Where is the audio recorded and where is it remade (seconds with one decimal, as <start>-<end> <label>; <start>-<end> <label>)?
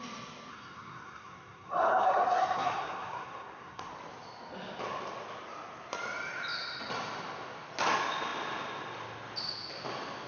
0.0-0.5 recorded; 0.5-3.9 remade; 3.9-10.3 recorded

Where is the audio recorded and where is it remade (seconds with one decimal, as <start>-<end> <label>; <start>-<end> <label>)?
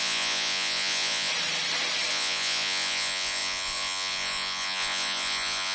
0.0-1.3 remade; 1.3-2.1 recorded; 2.1-5.7 remade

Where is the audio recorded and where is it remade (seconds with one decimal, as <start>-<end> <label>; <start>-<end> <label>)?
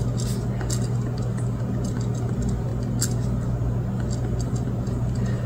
0.0-5.5 recorded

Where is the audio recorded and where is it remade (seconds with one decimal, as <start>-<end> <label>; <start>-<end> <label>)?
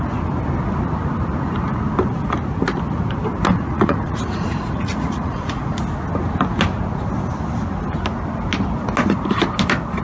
0.0-3.5 recorded; 3.5-5.8 remade; 5.8-10.0 recorded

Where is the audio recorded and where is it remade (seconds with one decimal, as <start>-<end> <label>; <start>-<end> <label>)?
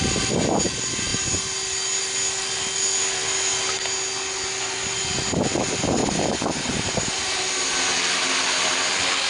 0.0-6.0 recorded; 6.0-7.5 remade; 7.5-9.3 recorded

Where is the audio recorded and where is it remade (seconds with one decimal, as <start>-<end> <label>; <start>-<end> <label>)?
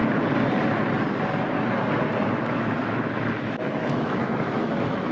0.0-2.3 recorded; 2.3-5.1 remade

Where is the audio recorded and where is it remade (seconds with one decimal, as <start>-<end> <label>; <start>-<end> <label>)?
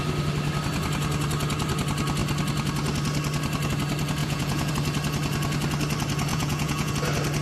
0.0-4.2 recorded; 4.2-4.7 remade; 4.7-6.3 recorded; 6.3-6.9 remade; 6.9-7.4 recorded